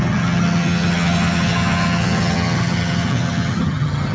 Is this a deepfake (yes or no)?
yes